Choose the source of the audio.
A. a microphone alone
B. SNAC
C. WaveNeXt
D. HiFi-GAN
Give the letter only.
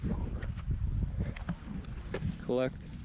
A